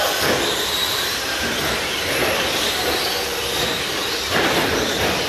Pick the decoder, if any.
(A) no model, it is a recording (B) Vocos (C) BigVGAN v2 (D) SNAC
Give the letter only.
A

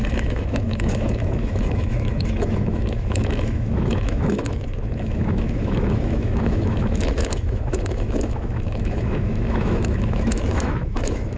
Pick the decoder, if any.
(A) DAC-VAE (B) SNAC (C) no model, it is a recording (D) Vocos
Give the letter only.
A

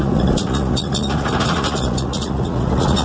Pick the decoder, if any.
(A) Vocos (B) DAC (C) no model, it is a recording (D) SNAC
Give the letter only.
A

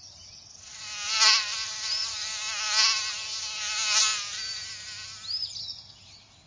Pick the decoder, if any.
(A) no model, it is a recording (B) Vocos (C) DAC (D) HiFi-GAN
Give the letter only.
A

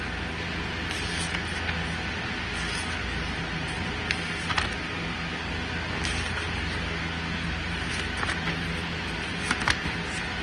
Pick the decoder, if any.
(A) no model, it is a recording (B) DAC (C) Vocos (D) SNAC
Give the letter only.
A